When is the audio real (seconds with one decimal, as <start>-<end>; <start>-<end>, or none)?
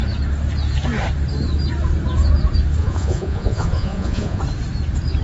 0.0-2.8; 4.4-5.2